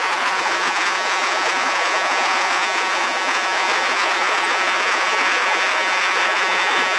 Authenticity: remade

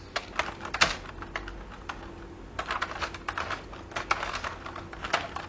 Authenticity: recorded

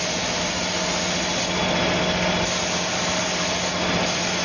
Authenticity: recorded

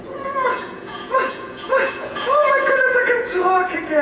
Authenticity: remade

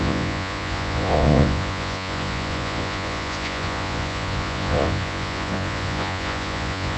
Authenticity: remade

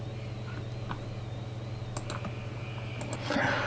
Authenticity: recorded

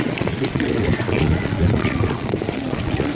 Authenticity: remade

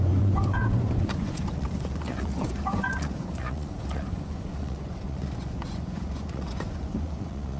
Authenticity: remade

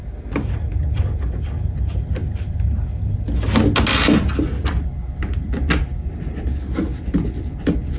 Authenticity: recorded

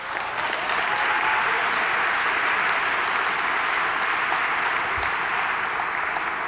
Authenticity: recorded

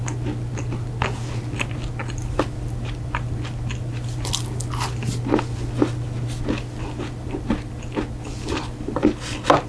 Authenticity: recorded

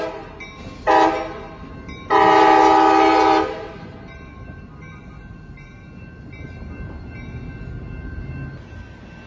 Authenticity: recorded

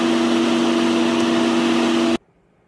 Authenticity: recorded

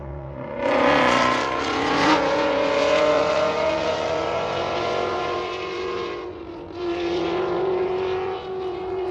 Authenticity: remade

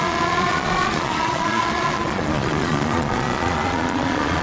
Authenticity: remade